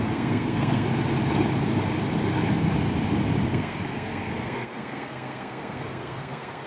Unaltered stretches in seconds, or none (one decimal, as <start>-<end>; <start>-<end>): 0.9-3.5